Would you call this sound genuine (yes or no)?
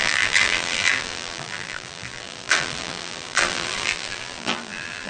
no